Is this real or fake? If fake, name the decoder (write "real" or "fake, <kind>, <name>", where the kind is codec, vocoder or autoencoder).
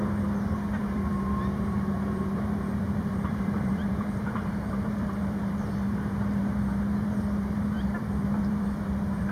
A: fake, vocoder, BigVGAN v2